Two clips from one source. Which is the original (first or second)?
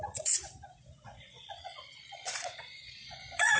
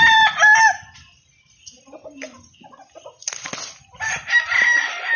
second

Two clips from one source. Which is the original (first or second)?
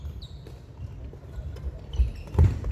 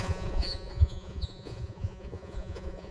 first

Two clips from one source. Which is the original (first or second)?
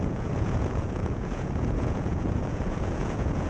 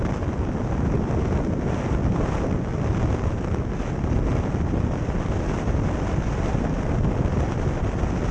second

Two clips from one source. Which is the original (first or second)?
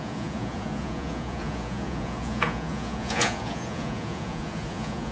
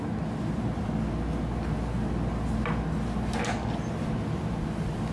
second